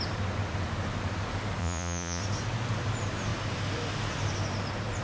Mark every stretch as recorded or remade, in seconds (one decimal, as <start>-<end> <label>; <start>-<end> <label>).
0.0-1.6 recorded; 1.6-2.2 remade; 2.2-5.0 recorded